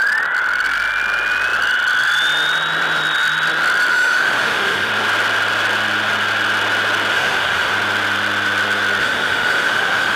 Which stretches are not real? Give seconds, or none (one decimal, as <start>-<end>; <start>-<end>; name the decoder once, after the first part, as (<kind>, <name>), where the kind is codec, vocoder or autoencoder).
3.9-4.9 (autoencoder, DAC-VAE); 7.1-7.7; 9.0-10.2